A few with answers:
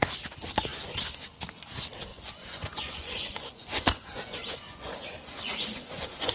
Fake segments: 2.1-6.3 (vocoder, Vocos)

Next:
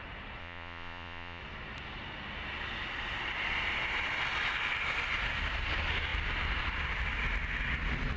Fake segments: 0.4-1.4 (vocoder, Vocos)

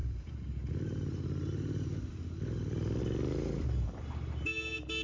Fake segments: 0.0-3.0 (vocoder, BigVGAN v2)

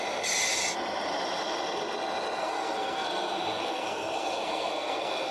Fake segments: 2.4-5.3 (codec, SNAC)

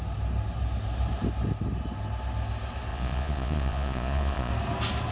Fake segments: 2.9-4.5 (vocoder, Vocos)

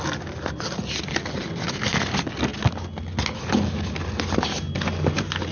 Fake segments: none